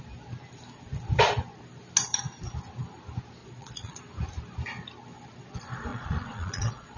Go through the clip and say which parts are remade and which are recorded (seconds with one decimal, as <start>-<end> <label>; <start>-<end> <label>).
0.0-3.4 recorded; 3.4-4.0 remade; 4.0-5.9 recorded; 5.9-7.0 remade